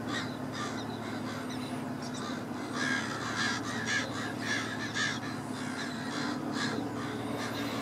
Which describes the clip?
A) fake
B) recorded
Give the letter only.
B